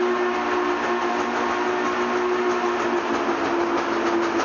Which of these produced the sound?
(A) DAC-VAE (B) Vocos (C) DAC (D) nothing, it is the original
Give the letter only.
D